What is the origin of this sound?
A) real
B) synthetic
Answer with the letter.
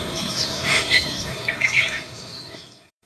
B